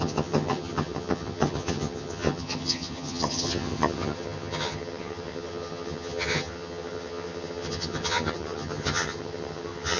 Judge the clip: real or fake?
fake